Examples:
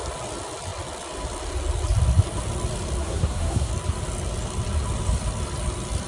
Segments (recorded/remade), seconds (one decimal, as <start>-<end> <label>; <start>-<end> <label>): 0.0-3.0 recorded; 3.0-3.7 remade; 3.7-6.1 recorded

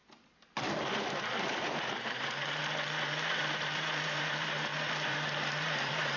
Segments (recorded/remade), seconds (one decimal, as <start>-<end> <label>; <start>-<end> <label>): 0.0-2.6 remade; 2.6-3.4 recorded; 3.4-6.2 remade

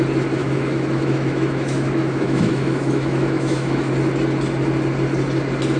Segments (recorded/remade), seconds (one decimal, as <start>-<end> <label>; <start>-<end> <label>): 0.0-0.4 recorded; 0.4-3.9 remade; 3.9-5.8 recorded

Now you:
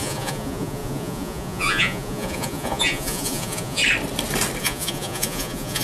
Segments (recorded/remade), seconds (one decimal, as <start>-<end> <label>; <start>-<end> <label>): 0.0-3.8 remade; 3.8-4.6 recorded; 4.6-5.8 remade

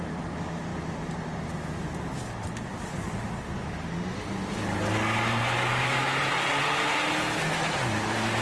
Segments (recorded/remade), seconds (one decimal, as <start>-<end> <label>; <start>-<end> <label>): 0.0-5.7 recorded; 5.7-6.2 remade; 6.2-8.4 recorded

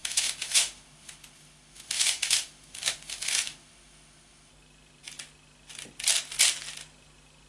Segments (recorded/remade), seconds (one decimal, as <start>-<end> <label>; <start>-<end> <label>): 0.0-4.5 remade; 4.5-7.5 recorded